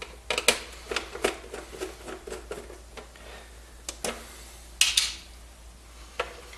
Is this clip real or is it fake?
real